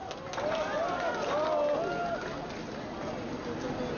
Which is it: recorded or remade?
recorded